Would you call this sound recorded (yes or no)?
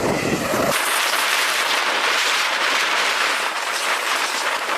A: no